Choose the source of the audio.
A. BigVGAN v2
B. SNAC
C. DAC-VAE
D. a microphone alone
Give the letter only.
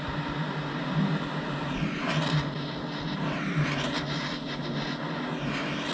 D